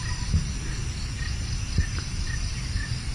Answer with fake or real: real